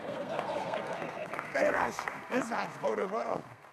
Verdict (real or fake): fake